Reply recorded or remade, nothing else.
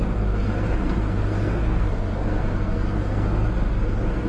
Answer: remade